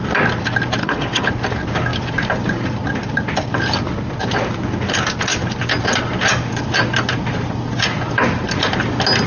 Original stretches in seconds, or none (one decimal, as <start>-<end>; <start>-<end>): 0.0-0.8; 1.3-9.3